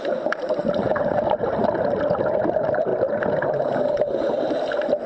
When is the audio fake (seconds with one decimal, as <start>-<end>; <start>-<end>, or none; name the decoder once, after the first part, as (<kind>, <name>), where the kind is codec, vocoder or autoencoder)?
0.0-2.9 (vocoder, BigVGAN v2); 4.5-5.1